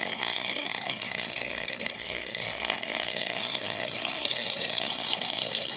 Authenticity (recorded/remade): remade